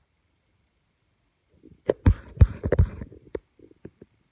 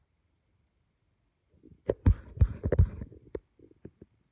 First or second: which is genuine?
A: second